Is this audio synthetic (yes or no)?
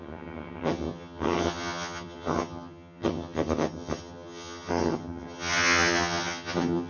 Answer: yes